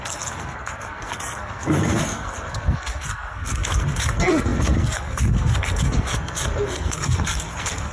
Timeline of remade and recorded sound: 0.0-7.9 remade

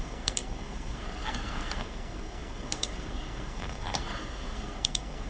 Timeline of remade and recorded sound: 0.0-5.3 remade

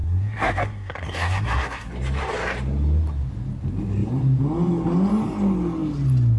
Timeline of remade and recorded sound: 0.0-1.9 remade; 1.9-6.4 recorded

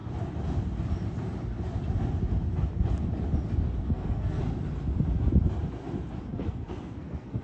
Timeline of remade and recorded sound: 0.0-3.8 recorded; 3.8-4.4 remade; 4.4-6.3 recorded; 6.3-7.4 remade

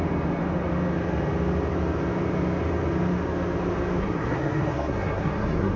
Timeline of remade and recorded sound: 0.0-4.0 recorded; 4.0-5.8 remade

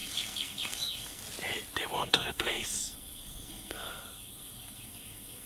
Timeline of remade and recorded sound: 0.0-1.2 remade; 1.2-2.0 recorded; 2.0-5.5 remade

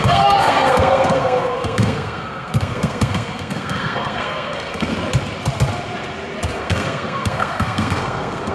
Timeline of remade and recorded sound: 0.0-4.9 remade; 4.9-6.6 recorded; 6.6-8.5 remade

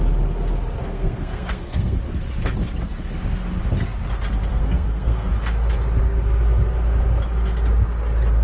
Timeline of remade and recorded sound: 0.0-0.8 recorded; 0.8-2.0 remade; 2.0-4.5 recorded; 4.5-5.3 remade; 5.3-8.4 recorded